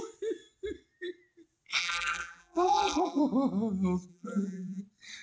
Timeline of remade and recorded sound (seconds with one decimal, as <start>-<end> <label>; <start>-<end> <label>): 0.0-1.8 recorded; 1.8-3.2 remade; 3.2-4.1 recorded; 4.1-4.8 remade; 4.8-5.2 recorded

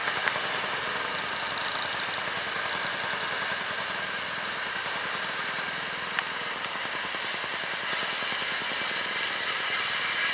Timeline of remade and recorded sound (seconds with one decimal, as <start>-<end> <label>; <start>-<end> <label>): 0.0-10.3 recorded

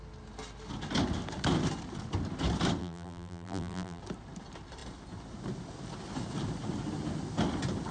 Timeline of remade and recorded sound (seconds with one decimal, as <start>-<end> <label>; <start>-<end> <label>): 0.0-2.8 recorded; 2.8-4.0 remade; 4.0-7.9 recorded

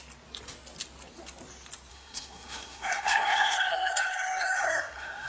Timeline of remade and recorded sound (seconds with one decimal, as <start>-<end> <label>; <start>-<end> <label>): 0.0-1.9 recorded; 1.9-5.3 remade